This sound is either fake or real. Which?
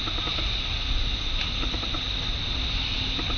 real